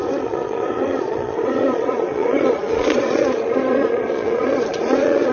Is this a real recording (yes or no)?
no